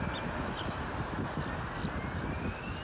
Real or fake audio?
real